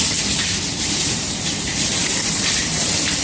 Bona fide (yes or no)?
no